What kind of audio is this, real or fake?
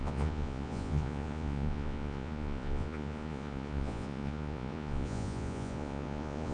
fake